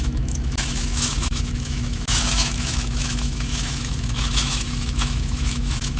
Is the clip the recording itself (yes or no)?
no